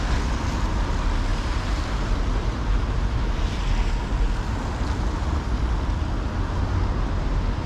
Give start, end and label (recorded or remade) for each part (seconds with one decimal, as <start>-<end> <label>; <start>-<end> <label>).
0.0-1.3 recorded; 1.3-4.3 remade; 4.3-7.7 recorded